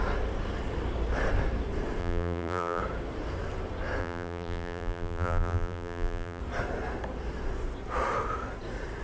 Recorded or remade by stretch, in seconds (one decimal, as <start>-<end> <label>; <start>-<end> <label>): 0.0-2.0 recorded; 2.0-2.8 remade; 2.8-4.0 recorded; 4.0-6.4 remade; 6.4-9.0 recorded